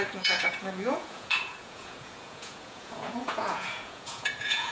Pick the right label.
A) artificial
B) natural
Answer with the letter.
A